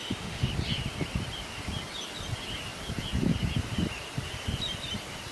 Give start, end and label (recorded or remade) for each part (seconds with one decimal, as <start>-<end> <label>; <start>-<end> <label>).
0.0-0.5 remade; 0.5-5.3 recorded